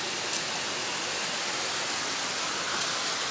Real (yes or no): yes